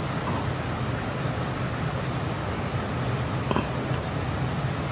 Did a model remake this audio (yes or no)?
no